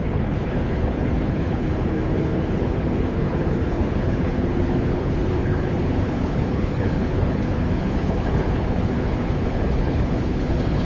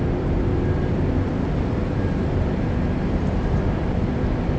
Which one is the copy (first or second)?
first